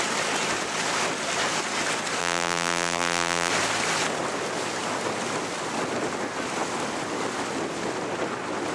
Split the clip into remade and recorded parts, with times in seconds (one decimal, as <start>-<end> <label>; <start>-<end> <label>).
0.0-2.2 recorded; 2.2-3.5 remade; 3.5-8.7 recorded